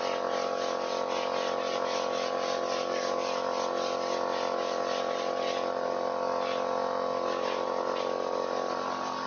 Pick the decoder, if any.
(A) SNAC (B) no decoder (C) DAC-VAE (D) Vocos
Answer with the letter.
B